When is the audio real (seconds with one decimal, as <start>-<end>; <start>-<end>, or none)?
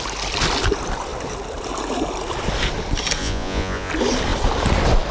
0.0-3.2; 3.9-5.1